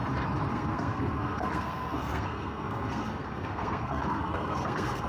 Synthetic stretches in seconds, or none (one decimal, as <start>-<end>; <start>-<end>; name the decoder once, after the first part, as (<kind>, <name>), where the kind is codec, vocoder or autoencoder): 0.5-5.1 (codec, SNAC)